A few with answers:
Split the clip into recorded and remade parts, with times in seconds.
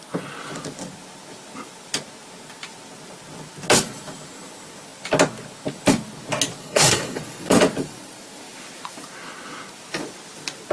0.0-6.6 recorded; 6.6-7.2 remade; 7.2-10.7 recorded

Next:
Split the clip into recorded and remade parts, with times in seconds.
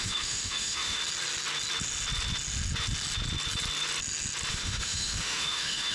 0.0-1.0 remade; 1.0-4.5 recorded; 4.5-5.9 remade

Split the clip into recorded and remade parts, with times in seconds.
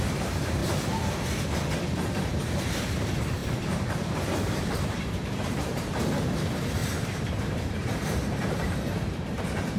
0.0-0.6 remade; 0.6-2.3 recorded; 2.3-9.8 remade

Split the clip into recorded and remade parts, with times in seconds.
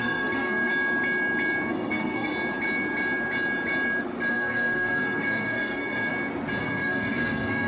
0.0-0.7 remade; 0.7-1.7 recorded; 1.7-2.3 remade; 2.3-4.3 recorded; 4.3-6.1 remade; 6.1-6.6 recorded; 6.6-7.7 remade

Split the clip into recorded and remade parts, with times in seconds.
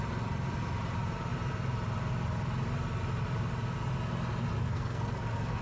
0.0-4.7 recorded; 4.7-5.6 remade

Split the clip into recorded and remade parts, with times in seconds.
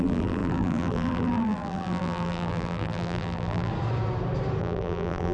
0.0-3.7 remade; 3.7-4.6 recorded; 4.6-5.3 remade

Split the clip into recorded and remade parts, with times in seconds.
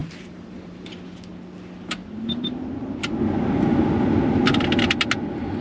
0.0-0.9 remade; 0.9-5.6 recorded